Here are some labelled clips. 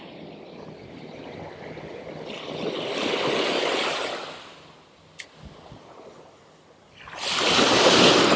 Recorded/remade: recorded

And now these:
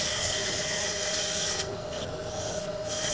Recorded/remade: remade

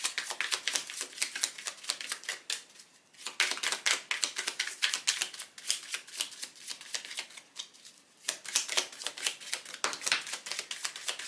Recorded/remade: recorded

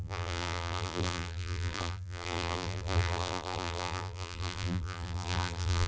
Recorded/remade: remade